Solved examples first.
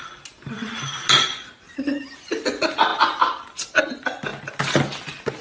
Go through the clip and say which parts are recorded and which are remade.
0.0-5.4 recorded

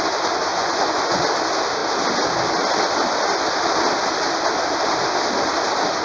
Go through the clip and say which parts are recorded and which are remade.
0.0-0.5 recorded; 0.5-1.2 remade; 1.2-6.0 recorded

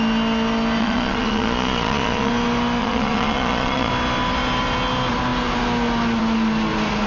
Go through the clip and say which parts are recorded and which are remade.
0.0-0.8 recorded; 0.8-2.3 remade; 2.3-2.8 recorded; 2.8-3.9 remade; 3.9-7.1 recorded

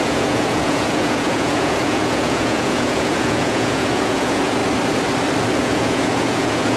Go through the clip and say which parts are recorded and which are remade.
0.0-4.6 remade; 4.6-5.6 recorded; 5.6-6.8 remade

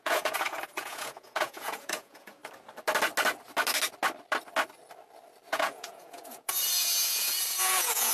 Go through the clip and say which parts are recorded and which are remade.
0.0-2.4 remade; 2.4-5.5 recorded; 5.5-8.1 remade

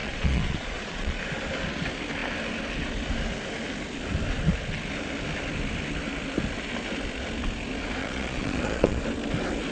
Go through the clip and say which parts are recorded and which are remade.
0.0-1.2 remade; 1.2-8.0 recorded; 8.0-9.0 remade; 9.0-9.7 recorded

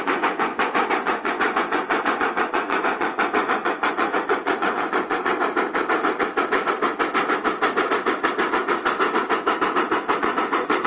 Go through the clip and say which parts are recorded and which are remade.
0.0-5.3 remade; 5.3-10.2 recorded; 10.2-10.9 remade

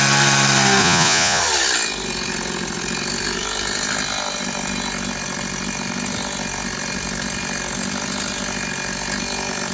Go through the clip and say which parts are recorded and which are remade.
0.0-0.8 recorded; 0.8-1.4 remade; 1.4-9.7 recorded